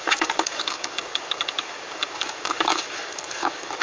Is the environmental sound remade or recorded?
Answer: remade